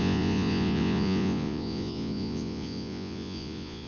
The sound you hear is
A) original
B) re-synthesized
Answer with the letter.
B